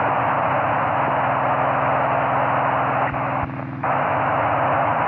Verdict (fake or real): real